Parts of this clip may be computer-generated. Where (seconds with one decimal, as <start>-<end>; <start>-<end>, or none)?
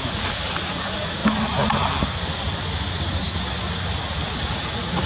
0.0-1.2; 4.3-5.1